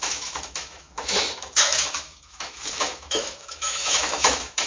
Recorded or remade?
remade